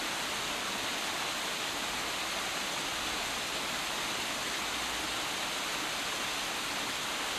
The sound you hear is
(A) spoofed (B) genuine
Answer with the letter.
B